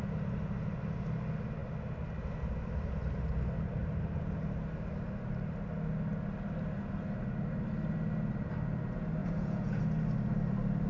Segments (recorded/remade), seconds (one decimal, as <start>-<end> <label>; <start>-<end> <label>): 0.0-9.2 recorded; 9.2-9.8 remade; 9.8-10.9 recorded